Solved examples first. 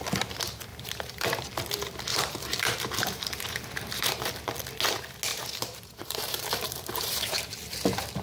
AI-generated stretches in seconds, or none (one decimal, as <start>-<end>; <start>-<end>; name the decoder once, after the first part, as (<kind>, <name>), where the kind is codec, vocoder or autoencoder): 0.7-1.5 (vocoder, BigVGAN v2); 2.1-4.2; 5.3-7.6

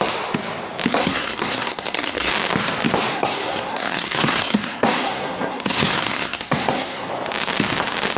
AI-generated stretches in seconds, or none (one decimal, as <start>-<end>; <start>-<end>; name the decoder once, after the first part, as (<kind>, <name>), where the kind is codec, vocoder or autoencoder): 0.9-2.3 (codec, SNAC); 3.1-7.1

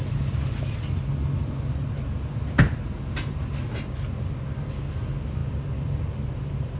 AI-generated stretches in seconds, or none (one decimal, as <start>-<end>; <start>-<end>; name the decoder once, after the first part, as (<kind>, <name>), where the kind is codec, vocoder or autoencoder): 5.4-6.8 (vocoder, BigVGAN v2)

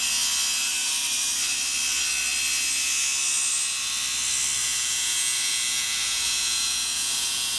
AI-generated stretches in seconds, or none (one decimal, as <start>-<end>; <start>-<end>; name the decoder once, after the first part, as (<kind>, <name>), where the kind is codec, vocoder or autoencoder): 4.6-7.6 (vocoder, Vocos)

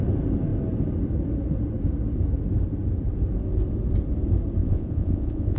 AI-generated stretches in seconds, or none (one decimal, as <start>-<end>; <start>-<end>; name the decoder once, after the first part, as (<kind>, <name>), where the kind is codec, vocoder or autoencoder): 4.6-5.6 (vocoder, Vocos)

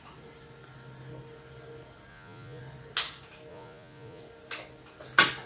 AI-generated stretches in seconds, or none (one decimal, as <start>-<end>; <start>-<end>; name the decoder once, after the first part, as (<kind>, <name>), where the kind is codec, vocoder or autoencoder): 2.1-2.6 (vocoder, Vocos); 3.5-4.2